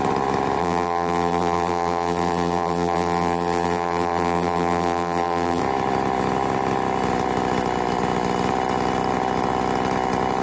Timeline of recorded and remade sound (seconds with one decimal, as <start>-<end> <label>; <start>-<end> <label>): 0.0-0.6 recorded; 0.6-5.6 remade; 5.6-10.4 recorded